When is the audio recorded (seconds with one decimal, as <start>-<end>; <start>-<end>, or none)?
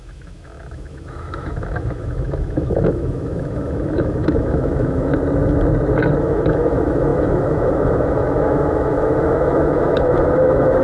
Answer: 5.1-6.2